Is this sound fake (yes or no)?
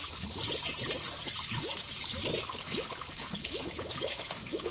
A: yes